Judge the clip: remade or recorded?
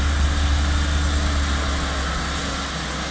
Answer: recorded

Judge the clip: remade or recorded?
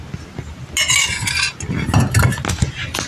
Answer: recorded